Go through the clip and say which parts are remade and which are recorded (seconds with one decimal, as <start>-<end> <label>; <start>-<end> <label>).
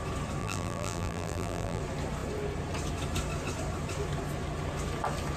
0.0-0.4 recorded; 0.4-1.8 remade; 1.8-5.4 recorded